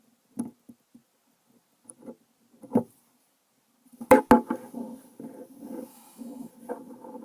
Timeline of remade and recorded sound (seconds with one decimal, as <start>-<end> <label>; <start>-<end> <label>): 0.0-5.9 recorded; 5.9-6.5 remade; 6.5-7.2 recorded